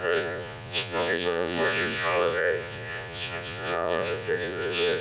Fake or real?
fake